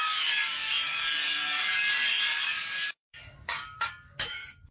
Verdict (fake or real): fake